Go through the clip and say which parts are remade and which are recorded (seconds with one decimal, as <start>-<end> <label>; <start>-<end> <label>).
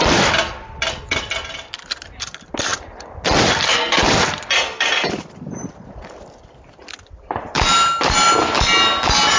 0.0-9.4 recorded